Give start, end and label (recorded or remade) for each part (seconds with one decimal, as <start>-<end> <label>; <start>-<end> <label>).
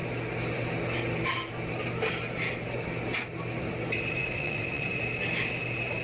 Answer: 0.0-4.2 recorded; 4.2-5.0 remade; 5.0-6.0 recorded